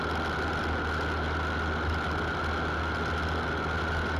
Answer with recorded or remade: recorded